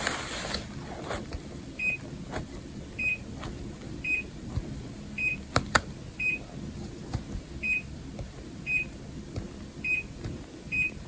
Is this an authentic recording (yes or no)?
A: yes